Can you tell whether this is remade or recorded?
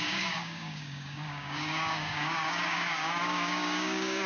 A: remade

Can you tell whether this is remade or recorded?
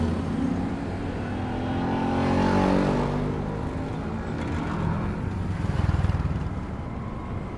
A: recorded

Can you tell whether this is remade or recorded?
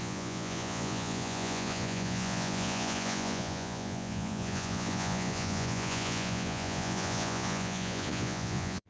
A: remade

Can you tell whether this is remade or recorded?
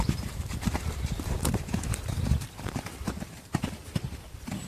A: remade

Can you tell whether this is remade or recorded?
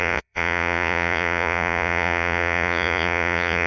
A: remade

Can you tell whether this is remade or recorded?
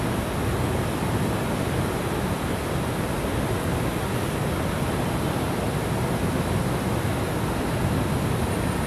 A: recorded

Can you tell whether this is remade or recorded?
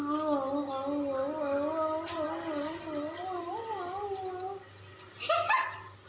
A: recorded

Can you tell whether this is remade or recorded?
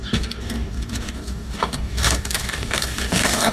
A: remade